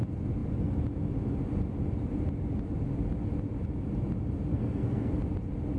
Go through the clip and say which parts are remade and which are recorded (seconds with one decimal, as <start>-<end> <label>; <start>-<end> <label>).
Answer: 0.0-4.5 recorded; 4.5-5.1 remade; 5.1-5.8 recorded